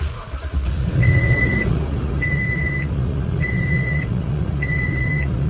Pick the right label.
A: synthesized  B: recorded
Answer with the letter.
A